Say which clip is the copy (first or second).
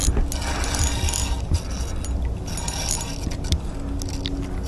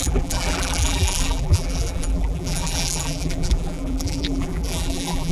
second